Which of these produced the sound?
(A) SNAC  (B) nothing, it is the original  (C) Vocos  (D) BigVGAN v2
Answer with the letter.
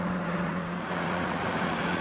C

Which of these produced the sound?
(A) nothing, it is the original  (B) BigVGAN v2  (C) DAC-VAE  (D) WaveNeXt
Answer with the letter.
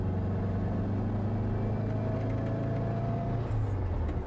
A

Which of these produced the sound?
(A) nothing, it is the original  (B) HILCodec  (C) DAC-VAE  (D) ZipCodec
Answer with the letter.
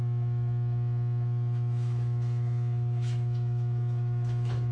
C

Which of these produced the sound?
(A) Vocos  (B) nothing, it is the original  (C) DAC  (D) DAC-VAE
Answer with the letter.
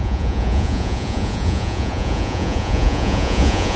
A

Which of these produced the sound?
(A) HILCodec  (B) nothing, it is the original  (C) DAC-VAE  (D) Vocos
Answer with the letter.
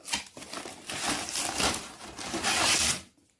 B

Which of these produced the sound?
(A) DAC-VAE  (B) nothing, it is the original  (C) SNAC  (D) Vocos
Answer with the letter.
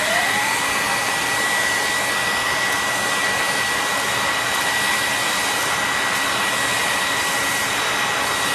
B